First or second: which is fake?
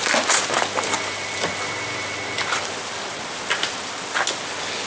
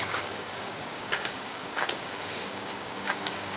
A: second